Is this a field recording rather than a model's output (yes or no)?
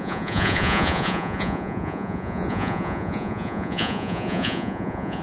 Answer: no